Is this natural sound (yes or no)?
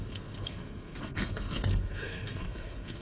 no